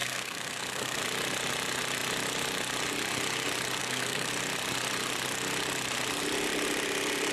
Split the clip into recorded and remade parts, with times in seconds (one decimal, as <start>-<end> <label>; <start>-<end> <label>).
0.0-1.0 remade; 1.0-3.8 recorded; 3.8-4.3 remade; 4.3-7.3 recorded